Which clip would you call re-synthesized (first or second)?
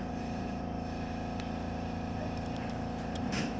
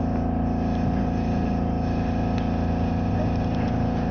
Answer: first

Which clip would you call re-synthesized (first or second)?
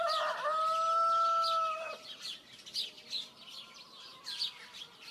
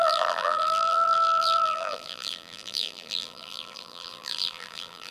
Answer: second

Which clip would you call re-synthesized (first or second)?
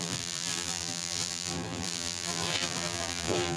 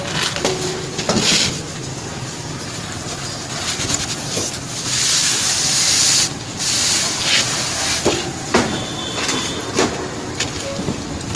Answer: first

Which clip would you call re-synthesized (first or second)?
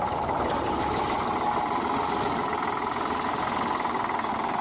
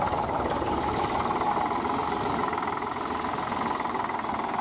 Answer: second